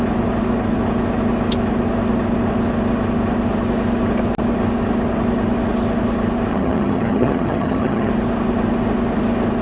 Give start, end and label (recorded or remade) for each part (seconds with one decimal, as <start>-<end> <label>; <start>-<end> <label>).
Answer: 0.0-6.5 recorded; 6.5-8.1 remade; 8.1-9.6 recorded